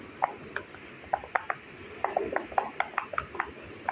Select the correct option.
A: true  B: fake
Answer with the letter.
A